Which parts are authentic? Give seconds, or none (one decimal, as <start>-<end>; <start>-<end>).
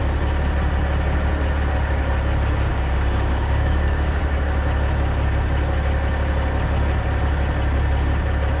0.0-2.7; 4.2-8.6